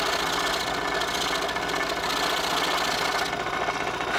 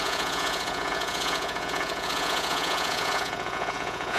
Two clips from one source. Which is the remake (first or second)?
second